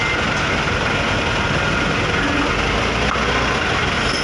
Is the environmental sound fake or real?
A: real